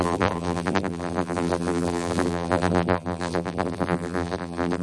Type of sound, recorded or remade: remade